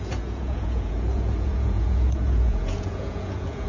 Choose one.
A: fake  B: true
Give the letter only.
A